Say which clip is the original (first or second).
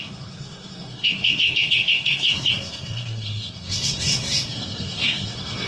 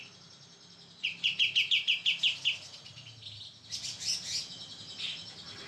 second